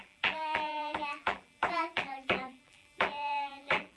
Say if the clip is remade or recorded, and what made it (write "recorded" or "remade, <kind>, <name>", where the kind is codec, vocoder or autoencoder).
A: remade, vocoder, BigVGAN v2